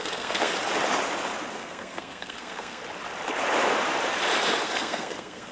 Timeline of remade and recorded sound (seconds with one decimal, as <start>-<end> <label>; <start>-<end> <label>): 0.0-0.5 remade; 0.5-1.5 recorded; 1.5-2.8 remade; 2.8-4.6 recorded; 4.6-5.5 remade